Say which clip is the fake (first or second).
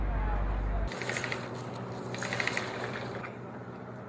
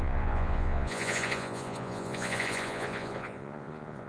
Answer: second